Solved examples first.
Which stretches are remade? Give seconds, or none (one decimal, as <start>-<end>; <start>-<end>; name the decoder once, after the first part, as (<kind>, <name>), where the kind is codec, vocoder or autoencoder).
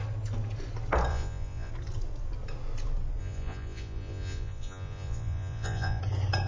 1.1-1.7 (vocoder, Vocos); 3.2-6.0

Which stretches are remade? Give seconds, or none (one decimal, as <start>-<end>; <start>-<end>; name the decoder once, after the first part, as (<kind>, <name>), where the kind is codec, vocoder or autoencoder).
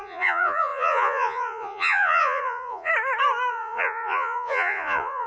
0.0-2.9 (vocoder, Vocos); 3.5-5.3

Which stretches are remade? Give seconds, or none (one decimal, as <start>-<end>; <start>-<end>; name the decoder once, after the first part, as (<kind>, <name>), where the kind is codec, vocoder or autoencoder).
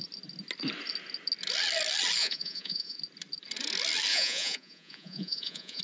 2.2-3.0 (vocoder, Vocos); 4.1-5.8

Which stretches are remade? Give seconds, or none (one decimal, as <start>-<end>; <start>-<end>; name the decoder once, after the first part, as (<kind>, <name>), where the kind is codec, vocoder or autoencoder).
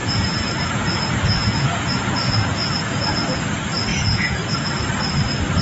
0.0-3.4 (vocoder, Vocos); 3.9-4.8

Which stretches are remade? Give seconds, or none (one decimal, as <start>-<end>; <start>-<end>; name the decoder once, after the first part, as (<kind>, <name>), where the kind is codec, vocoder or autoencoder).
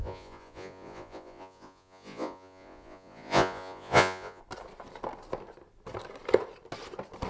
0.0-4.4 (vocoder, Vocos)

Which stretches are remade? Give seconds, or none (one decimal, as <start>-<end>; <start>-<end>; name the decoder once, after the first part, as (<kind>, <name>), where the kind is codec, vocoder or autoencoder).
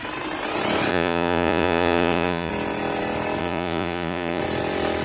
0.9-2.5 (vocoder, Vocos); 3.4-4.4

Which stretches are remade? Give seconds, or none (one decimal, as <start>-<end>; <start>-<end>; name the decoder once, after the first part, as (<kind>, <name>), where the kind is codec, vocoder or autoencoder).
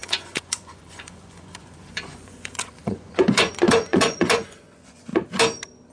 0.0-5.1 (vocoder, Vocos)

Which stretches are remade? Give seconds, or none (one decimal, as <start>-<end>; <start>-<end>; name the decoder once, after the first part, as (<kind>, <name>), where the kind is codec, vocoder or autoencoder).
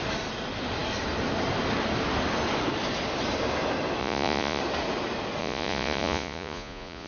4.0-4.6 (vocoder, Vocos); 5.4-7.1